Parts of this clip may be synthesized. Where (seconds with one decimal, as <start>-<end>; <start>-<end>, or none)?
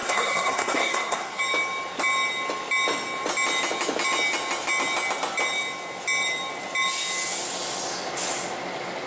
0.0-1.4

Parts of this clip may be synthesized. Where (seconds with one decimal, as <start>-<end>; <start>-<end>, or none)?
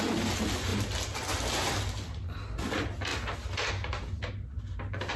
none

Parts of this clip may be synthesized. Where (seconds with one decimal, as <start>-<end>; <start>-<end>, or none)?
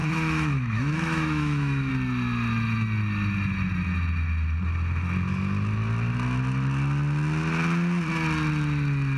0.0-1.9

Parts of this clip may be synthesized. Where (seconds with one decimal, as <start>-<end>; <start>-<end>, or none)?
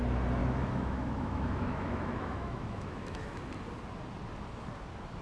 0.4-3.5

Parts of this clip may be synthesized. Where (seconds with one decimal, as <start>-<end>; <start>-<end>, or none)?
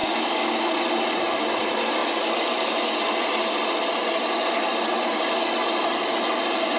0.0-0.6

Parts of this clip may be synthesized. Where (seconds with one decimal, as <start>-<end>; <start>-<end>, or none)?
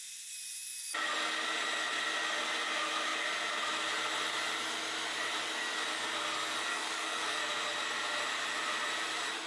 6.7-7.4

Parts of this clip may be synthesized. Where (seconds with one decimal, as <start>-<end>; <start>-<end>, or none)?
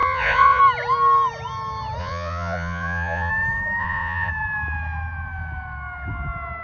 0.0-0.6; 2.0-3.3; 3.8-4.3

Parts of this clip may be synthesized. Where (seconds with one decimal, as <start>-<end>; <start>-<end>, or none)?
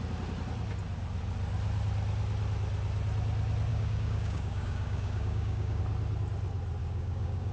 3.7-5.8; 6.8-7.5